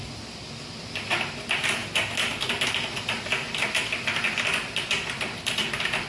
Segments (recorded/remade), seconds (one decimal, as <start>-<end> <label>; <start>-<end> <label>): 0.0-6.1 recorded

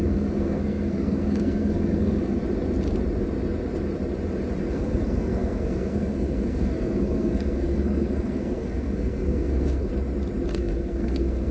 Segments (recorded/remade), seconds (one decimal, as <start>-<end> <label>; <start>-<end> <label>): 0.0-2.4 remade; 2.4-4.7 recorded; 4.7-9.9 remade; 9.9-10.5 recorded; 10.5-11.5 remade

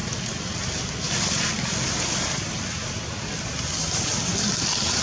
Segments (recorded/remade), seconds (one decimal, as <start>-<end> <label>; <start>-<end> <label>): 0.0-5.0 recorded

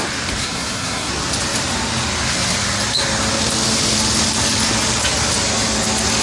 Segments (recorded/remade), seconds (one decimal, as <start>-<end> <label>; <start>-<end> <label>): 0.0-0.4 recorded; 0.4-1.1 remade; 1.1-6.2 recorded